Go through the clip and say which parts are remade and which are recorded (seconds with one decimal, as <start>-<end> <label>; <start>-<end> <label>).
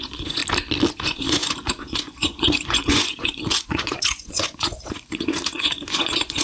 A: 0.0-0.4 remade; 0.4-0.9 recorded; 0.9-6.4 remade